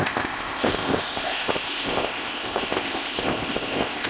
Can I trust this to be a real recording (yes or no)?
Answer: no